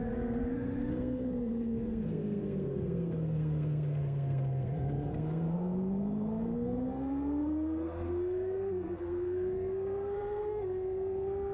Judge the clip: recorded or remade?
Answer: remade